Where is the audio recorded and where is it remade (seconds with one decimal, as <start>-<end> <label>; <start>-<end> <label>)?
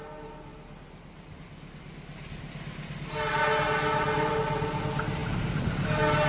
0.0-6.3 recorded